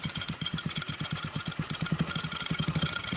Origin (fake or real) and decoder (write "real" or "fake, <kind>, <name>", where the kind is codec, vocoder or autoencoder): fake, vocoder, Vocos